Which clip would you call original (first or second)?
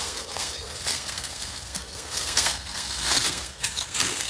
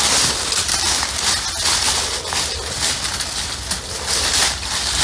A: second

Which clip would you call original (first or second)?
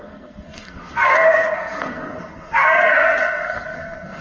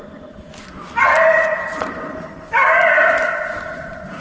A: second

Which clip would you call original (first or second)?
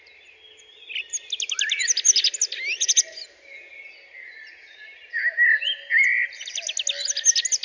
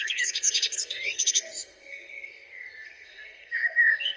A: first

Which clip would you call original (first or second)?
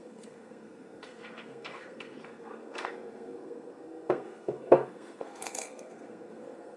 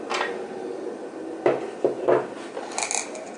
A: second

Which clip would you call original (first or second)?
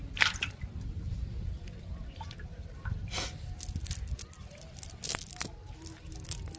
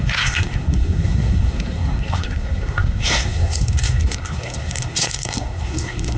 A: first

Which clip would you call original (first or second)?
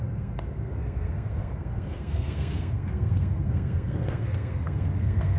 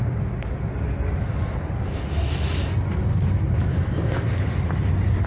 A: second